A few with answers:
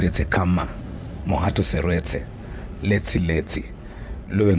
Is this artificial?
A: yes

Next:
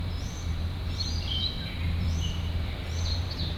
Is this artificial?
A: yes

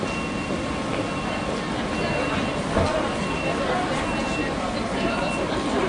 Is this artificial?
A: no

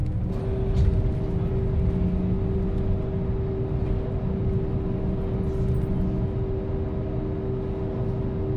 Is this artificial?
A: no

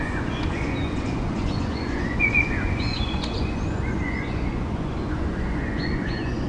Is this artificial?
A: yes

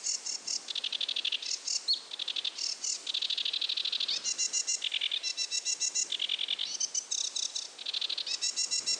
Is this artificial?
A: no